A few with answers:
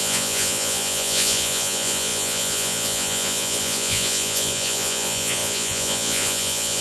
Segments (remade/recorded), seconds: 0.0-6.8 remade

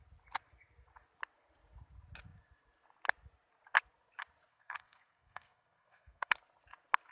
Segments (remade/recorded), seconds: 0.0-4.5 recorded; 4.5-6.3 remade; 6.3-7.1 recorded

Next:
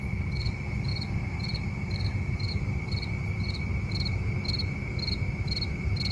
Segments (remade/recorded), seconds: 0.0-6.1 recorded

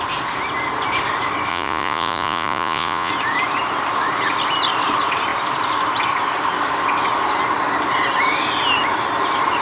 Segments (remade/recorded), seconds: 0.0-1.5 recorded; 1.5-3.1 remade; 3.1-9.6 recorded